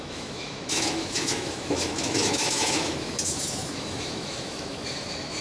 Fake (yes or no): yes